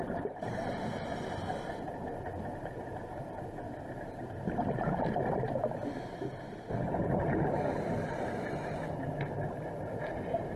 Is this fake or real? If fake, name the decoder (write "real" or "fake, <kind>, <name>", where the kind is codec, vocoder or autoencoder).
real